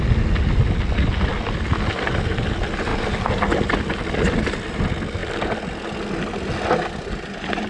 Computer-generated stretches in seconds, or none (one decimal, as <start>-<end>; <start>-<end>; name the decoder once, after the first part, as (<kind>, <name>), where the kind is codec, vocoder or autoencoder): 2.9-4.7 (vocoder, BigVGAN v2)